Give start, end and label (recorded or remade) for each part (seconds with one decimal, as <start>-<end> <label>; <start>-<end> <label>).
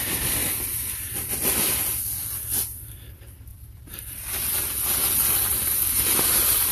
0.0-0.4 recorded; 0.4-2.0 remade; 2.0-3.5 recorded; 3.5-6.7 remade